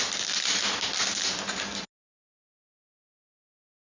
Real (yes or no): yes